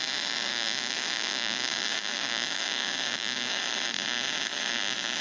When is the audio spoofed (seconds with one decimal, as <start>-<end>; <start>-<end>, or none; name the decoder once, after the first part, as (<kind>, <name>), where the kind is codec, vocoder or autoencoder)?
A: 0.5-3.6 (codec, DAC)

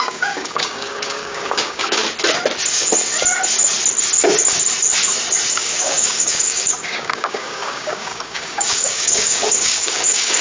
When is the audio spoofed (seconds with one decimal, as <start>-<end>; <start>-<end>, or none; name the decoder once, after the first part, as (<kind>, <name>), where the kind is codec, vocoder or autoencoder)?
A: 0.0-2.0 (codec, DAC); 5.5-10.4

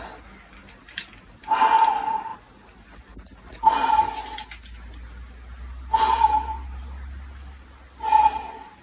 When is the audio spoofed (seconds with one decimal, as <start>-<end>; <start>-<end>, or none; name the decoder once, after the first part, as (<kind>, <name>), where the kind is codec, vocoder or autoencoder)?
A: none

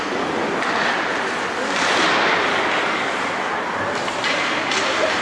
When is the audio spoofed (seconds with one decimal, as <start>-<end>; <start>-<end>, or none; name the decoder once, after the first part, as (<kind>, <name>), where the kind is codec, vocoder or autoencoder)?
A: 2.5-3.1 (codec, DAC)

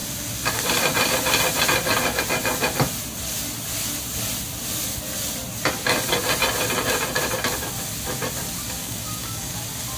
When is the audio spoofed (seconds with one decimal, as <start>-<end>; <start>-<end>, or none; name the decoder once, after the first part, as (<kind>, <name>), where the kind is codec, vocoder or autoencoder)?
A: 8.8-9.5 (codec, DAC)

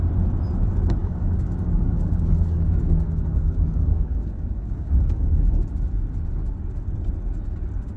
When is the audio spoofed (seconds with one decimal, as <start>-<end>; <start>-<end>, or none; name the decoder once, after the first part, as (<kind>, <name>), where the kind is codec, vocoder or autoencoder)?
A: 1.0-5.6 (codec, DAC)

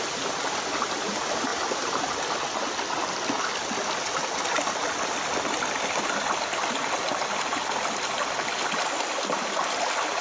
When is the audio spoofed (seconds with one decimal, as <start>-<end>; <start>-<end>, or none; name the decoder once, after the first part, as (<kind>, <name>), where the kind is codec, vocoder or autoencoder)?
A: none

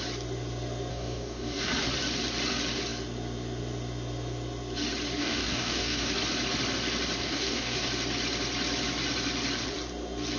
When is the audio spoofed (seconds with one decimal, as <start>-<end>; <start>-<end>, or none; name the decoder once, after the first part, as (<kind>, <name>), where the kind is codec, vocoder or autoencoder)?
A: 0.9-1.7 (codec, DAC); 5.2-6.1; 7.2-7.9